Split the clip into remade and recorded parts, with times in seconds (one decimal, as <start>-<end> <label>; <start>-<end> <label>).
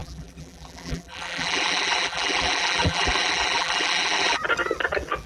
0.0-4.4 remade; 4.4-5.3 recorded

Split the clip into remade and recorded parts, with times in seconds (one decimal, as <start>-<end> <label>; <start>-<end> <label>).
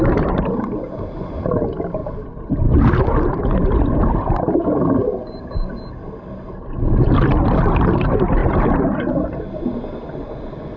0.0-2.0 recorded; 2.0-6.8 remade; 6.8-10.8 recorded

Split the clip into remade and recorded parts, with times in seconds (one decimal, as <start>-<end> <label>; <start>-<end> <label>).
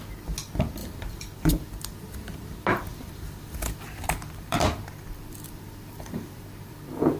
0.0-0.8 recorded; 0.8-2.4 remade; 2.4-2.9 recorded; 2.9-7.2 remade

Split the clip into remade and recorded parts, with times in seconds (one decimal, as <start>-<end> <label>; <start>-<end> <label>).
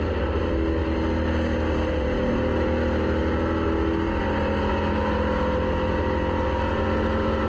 0.0-7.5 recorded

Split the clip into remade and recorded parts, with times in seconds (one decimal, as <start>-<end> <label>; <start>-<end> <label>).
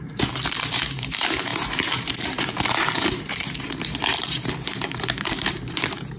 0.0-6.2 remade